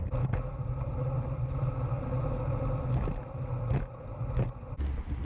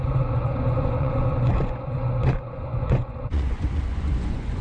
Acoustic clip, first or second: first